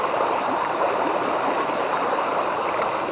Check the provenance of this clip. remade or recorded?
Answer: recorded